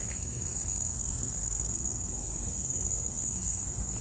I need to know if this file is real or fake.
fake